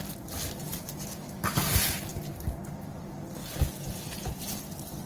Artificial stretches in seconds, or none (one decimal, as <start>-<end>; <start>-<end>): 3.4-4.4